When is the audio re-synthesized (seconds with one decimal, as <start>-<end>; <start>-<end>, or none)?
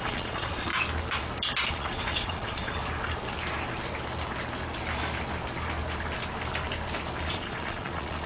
0.0-0.7; 1.7-2.8; 7.2-8.3